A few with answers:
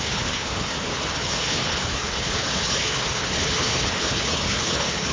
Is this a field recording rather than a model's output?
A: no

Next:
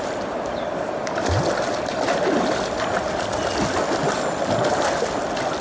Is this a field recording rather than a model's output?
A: yes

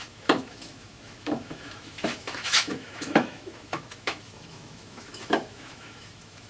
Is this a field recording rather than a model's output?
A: no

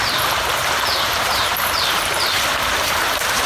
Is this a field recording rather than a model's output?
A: no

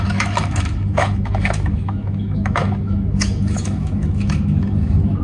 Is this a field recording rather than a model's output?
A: no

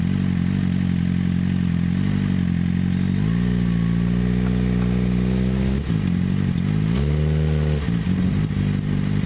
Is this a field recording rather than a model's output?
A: yes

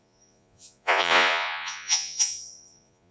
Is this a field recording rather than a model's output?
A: no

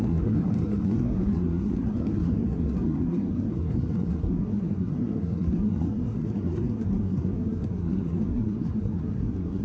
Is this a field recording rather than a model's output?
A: no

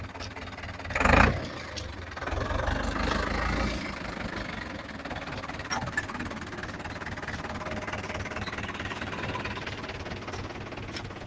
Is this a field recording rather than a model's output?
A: yes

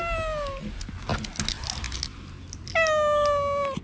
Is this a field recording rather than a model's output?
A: yes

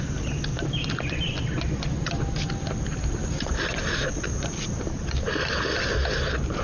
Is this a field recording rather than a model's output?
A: yes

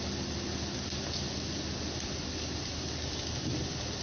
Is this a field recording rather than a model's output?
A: yes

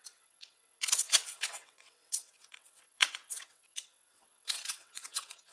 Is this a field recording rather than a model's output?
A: no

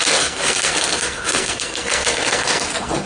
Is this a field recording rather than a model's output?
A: no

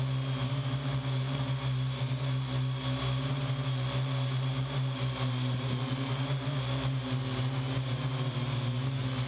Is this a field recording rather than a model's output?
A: yes